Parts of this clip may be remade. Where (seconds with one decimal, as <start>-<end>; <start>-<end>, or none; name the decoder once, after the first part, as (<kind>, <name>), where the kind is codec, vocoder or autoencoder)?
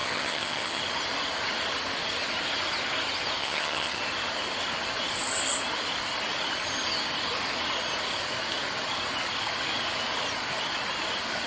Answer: 0.0-0.8 (vocoder, HiFi-GAN); 3.4-4.0